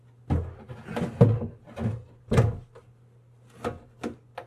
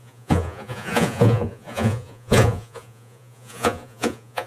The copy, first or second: second